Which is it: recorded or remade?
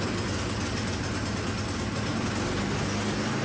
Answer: recorded